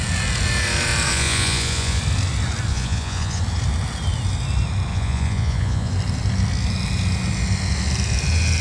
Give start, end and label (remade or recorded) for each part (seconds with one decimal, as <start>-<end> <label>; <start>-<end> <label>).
0.0-1.1 recorded; 1.1-2.0 remade; 2.0-2.7 recorded; 2.7-3.4 remade; 3.4-4.9 recorded; 4.9-5.9 remade; 5.9-8.6 recorded